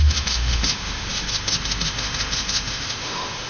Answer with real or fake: fake